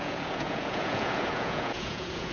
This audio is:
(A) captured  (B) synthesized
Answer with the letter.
B